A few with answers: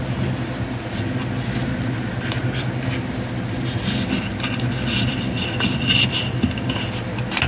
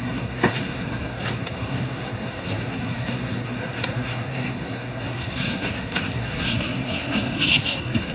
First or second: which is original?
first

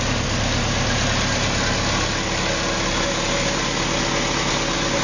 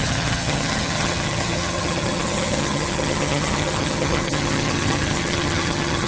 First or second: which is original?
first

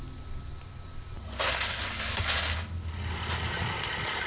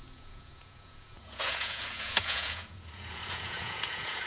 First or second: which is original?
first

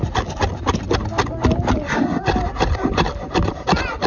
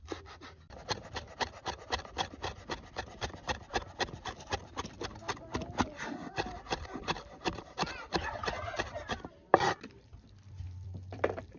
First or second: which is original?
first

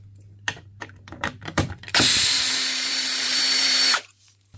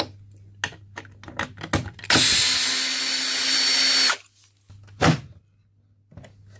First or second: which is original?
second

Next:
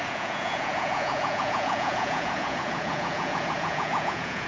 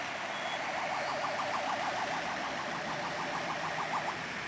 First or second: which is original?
second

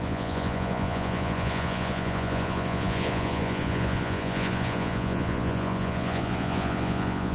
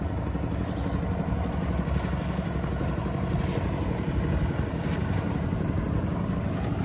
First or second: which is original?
second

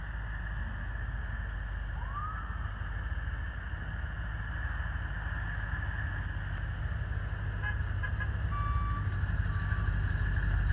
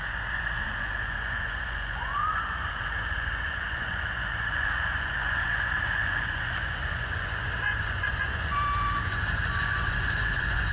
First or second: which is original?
first